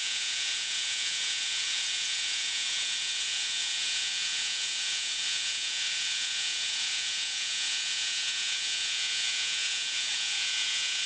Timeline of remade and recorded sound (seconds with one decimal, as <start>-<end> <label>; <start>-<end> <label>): 0.0-11.1 remade